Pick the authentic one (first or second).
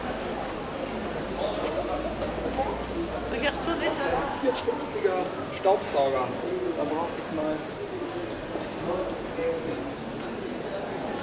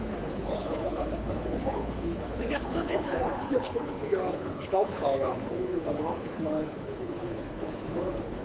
first